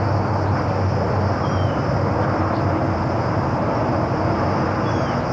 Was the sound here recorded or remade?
recorded